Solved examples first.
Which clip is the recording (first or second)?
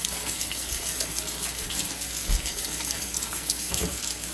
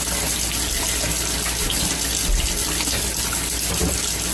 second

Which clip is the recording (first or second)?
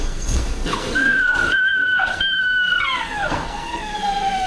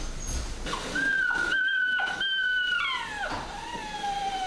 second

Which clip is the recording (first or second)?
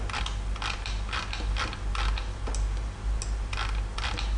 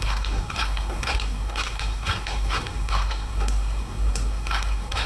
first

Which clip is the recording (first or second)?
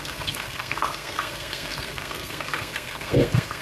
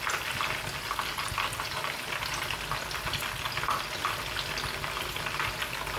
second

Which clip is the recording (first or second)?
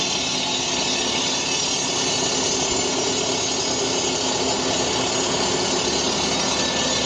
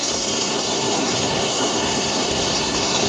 first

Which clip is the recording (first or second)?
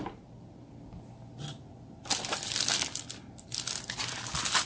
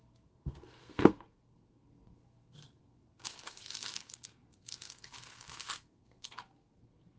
first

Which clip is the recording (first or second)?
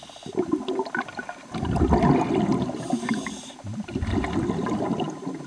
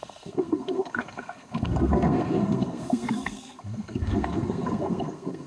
first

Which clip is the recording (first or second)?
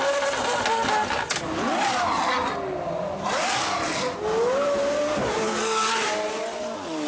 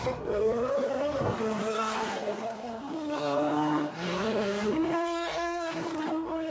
first